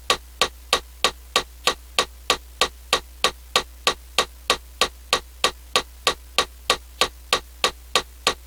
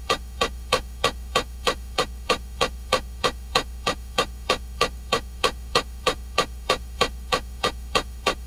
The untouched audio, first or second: first